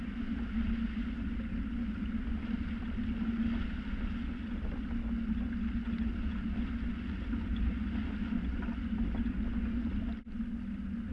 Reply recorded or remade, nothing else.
recorded